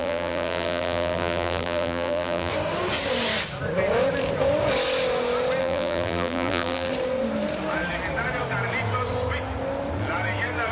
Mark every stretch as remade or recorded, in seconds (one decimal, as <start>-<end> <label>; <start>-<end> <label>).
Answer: 0.0-2.5 remade; 2.5-5.6 recorded; 5.6-6.9 remade; 6.9-10.7 recorded